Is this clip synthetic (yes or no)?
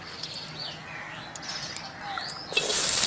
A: no